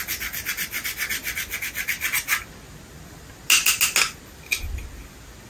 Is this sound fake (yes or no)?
no